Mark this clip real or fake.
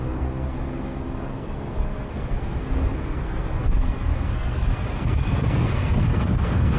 fake